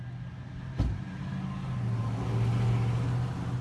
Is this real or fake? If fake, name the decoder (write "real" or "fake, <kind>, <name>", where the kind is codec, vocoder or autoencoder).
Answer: real